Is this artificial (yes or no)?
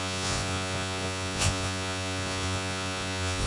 yes